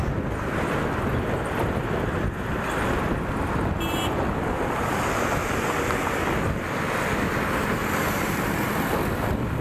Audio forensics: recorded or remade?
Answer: recorded